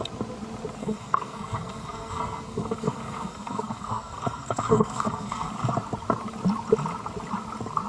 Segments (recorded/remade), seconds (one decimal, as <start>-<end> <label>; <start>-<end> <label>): 0.0-0.8 recorded; 0.8-5.5 remade; 5.5-7.9 recorded